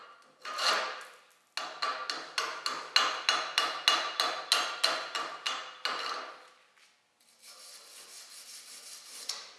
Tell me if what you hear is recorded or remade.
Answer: recorded